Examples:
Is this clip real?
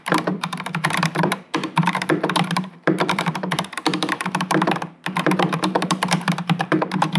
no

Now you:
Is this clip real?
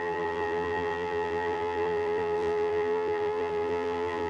no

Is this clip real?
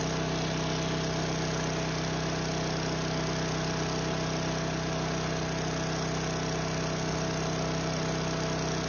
yes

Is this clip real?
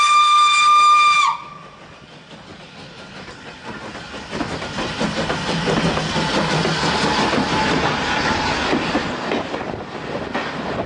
yes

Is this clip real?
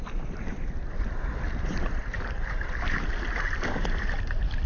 no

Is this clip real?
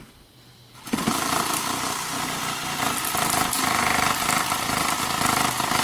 yes